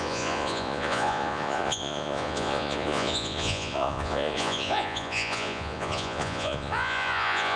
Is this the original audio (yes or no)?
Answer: no